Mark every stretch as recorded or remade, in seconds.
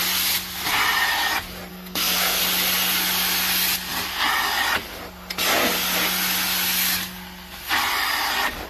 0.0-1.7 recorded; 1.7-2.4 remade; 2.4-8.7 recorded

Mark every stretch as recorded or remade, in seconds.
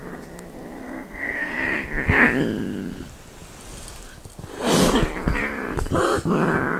0.0-0.8 recorded; 0.8-1.5 remade; 1.5-6.8 recorded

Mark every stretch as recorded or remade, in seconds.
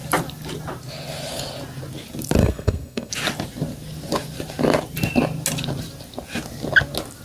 0.0-2.4 recorded; 2.4-3.1 remade; 3.1-7.2 recorded